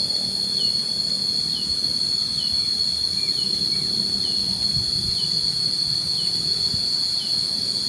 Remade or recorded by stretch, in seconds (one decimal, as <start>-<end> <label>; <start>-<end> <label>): 0.0-4.4 recorded; 4.4-5.5 remade; 5.5-7.9 recorded